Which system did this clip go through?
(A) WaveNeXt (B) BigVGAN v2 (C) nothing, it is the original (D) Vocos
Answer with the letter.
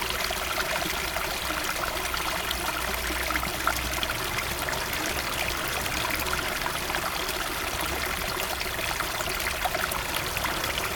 C